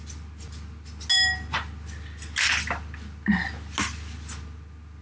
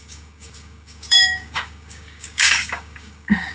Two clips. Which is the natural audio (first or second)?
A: first